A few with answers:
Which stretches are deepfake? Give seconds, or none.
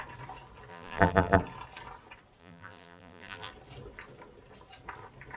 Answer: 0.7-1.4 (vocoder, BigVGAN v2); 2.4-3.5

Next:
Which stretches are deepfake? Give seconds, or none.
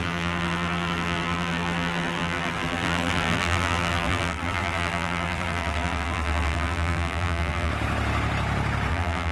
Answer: 0.0-7.7 (vocoder, BigVGAN v2); 8.9-9.3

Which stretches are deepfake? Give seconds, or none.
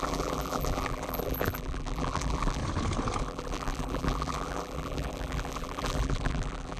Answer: 0.0-2.6 (vocoder, BigVGAN v2); 3.2-6.8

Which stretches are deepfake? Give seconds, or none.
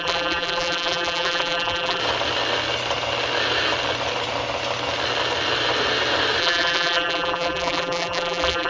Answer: 0.0-2.0 (vocoder, BigVGAN v2); 6.4-8.7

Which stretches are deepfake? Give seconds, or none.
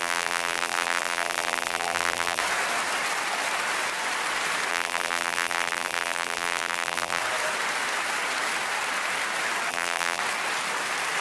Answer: 0.0-2.4 (vocoder, BigVGAN v2); 4.7-7.2; 9.7-10.2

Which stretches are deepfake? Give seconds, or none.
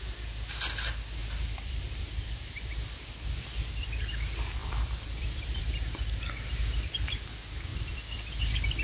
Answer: 1.2-3.7 (vocoder, BigVGAN v2); 4.6-5.6; 7.7-8.3